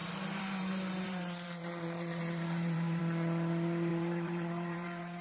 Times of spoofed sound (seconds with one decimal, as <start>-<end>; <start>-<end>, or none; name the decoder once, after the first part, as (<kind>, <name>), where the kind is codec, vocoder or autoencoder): 0.0-3.0 (vocoder, BigVGAN v2); 3.9-5.2